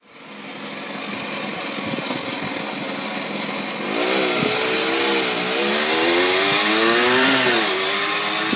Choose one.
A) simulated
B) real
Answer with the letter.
B